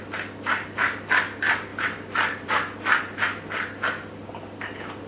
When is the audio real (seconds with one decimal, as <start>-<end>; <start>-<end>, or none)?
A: 0.0-5.1